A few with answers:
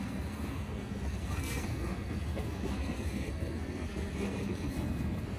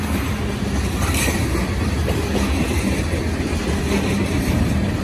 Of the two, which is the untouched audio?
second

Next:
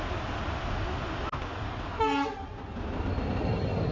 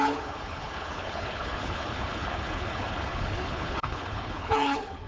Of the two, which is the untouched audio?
first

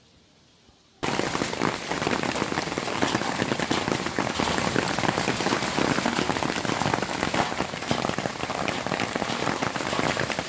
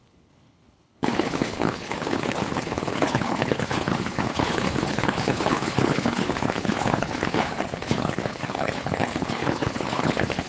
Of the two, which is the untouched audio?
first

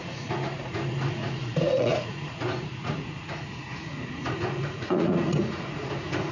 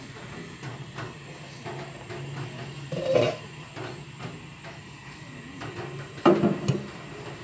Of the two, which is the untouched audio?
second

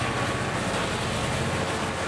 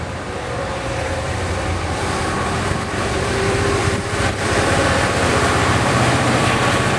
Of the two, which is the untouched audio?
first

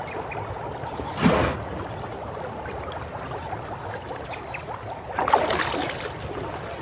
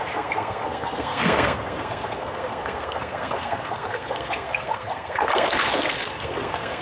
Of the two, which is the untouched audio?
first